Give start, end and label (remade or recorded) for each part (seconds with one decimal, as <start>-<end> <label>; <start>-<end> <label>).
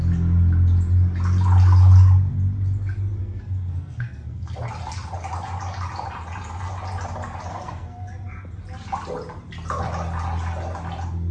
0.0-3.2 recorded; 3.2-4.5 remade; 4.5-7.5 recorded; 7.5-8.1 remade; 8.1-11.3 recorded